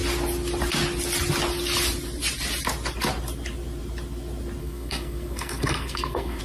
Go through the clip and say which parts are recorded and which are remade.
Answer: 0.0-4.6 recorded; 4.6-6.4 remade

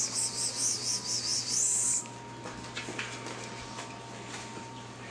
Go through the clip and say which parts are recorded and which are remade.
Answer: 0.0-5.1 recorded

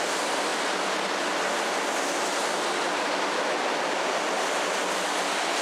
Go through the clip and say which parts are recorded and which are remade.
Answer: 0.0-5.6 recorded

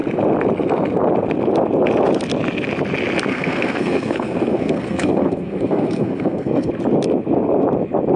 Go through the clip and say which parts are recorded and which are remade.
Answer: 0.0-3.3 recorded; 3.3-6.7 remade; 6.7-8.2 recorded